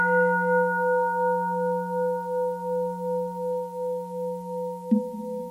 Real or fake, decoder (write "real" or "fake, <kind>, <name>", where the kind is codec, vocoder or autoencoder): real